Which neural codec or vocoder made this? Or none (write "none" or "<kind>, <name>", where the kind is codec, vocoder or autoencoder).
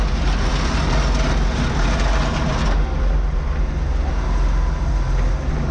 none